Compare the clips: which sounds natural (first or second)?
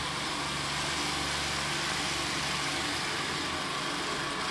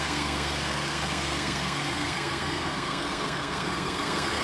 first